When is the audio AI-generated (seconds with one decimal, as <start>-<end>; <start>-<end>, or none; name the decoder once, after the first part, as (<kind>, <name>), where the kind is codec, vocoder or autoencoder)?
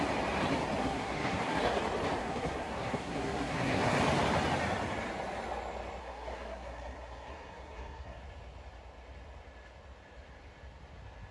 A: 0.8-1.8 (codec, SNAC); 2.2-4.0; 6.0-8.2